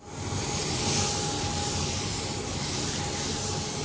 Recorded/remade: recorded